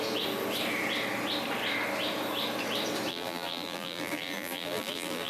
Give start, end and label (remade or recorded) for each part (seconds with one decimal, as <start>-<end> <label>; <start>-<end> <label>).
0.0-3.1 recorded; 3.1-5.3 remade

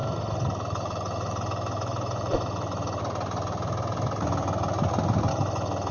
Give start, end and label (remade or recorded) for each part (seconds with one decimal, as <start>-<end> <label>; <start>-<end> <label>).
0.0-3.0 remade; 3.0-5.3 recorded; 5.3-5.9 remade

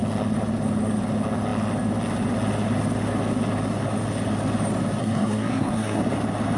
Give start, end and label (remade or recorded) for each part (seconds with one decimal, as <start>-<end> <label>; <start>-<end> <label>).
0.0-5.0 recorded; 5.0-6.0 remade; 6.0-6.6 recorded

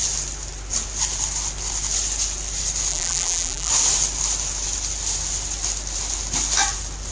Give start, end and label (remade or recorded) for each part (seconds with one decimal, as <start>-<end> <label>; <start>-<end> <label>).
0.0-2.9 recorded; 2.9-3.7 remade; 3.7-7.1 recorded

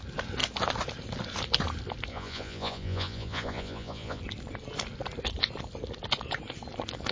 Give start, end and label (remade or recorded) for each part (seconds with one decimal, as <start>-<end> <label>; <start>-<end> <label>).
0.0-2.1 recorded; 2.1-4.2 remade; 4.2-7.1 recorded

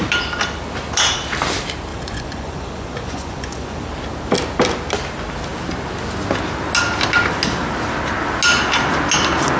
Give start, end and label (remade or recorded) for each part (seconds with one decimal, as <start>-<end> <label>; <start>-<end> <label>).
0.0-1.9 recorded; 1.9-3.9 remade; 3.9-9.6 recorded

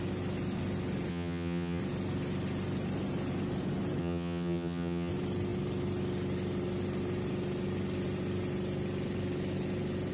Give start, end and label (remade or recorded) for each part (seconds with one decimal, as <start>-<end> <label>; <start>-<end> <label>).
0.0-1.1 recorded; 1.1-1.8 remade; 1.8-4.0 recorded; 4.0-5.1 remade; 5.1-10.1 recorded

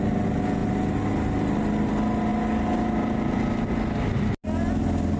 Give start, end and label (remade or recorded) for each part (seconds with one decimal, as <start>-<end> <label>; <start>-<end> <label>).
0.0-5.2 recorded